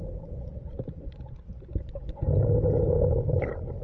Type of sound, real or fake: real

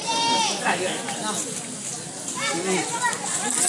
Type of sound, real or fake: real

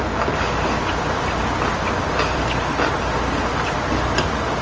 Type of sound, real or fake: real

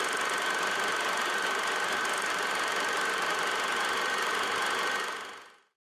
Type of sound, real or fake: real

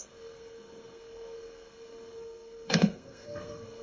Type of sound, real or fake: fake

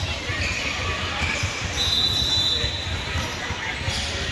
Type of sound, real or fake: real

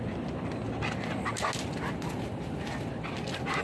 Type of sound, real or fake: real